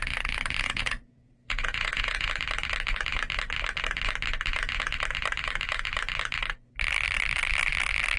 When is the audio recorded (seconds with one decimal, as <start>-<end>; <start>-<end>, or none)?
0.0-0.6; 2.3-8.2